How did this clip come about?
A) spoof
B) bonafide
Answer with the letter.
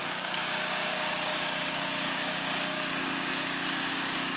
A